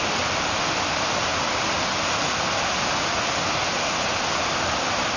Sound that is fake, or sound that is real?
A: real